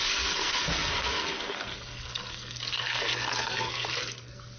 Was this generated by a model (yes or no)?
yes